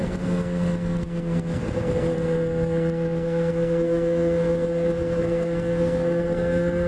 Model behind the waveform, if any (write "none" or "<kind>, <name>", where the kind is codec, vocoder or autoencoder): codec, SNAC